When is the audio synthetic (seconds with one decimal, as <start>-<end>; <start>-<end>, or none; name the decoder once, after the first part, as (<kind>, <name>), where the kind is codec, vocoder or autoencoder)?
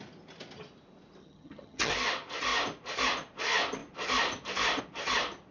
1.2-1.9 (vocoder, HiFi-GAN)